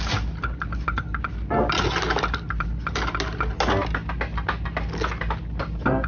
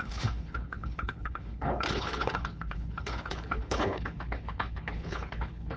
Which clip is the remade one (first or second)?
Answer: second